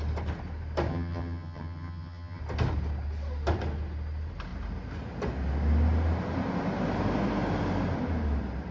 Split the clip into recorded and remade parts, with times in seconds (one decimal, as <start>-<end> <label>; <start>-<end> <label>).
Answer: 0.0-0.9 recorded; 0.9-2.4 remade; 2.4-8.7 recorded